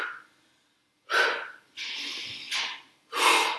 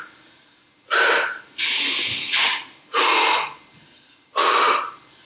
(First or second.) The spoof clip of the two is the second